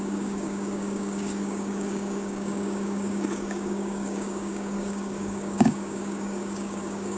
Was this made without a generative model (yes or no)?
no